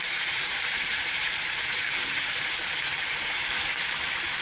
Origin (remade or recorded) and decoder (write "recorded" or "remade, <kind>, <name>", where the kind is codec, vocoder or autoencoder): remade, vocoder, BigVGAN v2